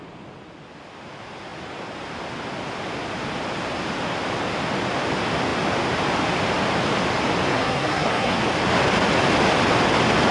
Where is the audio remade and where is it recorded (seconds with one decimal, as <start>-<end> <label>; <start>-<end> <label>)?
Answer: 0.0-7.5 recorded; 7.5-8.4 remade; 8.4-10.3 recorded

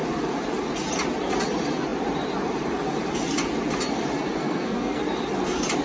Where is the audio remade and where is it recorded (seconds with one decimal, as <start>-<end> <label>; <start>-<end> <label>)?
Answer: 0.0-4.4 recorded; 4.4-5.0 remade; 5.0-5.8 recorded

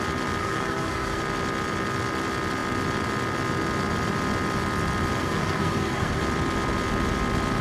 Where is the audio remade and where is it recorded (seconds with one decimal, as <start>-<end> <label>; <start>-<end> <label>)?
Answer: 0.0-0.4 recorded; 0.4-1.2 remade; 1.2-5.2 recorded; 5.2-6.2 remade; 6.2-7.6 recorded